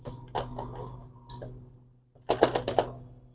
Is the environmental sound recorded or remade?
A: recorded